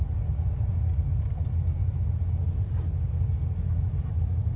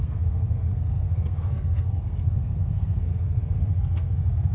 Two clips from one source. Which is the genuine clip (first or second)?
first